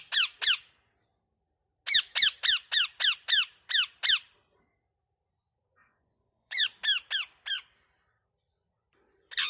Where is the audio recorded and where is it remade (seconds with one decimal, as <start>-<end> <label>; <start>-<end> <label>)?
0.0-5.8 recorded; 5.8-6.6 remade; 6.6-9.5 recorded